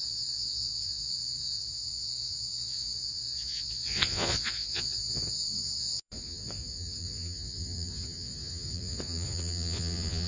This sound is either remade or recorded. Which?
remade